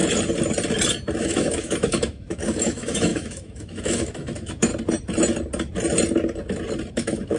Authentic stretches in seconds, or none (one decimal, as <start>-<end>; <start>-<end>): 0.0-1.2; 4.7-6.9